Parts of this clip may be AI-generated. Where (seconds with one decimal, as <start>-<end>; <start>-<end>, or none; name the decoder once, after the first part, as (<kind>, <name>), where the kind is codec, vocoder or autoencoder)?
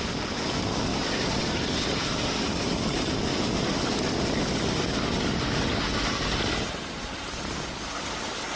none